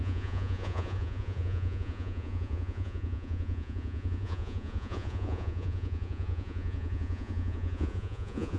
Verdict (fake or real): fake